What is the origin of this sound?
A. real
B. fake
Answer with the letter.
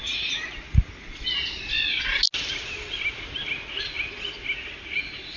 A